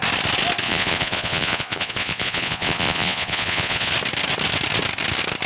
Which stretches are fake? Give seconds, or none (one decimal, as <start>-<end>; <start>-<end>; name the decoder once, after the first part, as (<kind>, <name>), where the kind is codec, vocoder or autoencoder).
0.6-3.9 (vocoder, Vocos)